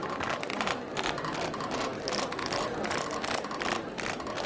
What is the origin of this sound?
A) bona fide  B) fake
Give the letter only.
A